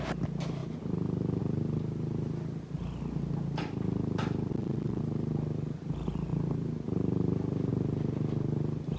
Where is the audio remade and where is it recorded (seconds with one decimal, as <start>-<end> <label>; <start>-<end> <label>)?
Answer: 0.0-4.5 recorded; 4.5-5.0 remade; 5.0-9.0 recorded